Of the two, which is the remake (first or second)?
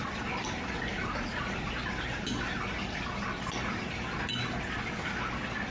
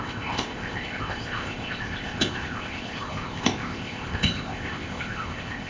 second